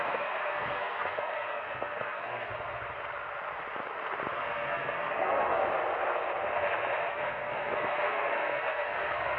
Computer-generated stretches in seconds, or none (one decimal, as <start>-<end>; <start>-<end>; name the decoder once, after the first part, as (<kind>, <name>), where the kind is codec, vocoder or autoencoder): 0.0-2.5 (codec, SNAC); 4.3-5.6; 7.1-9.4